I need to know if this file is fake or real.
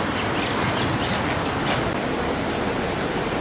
real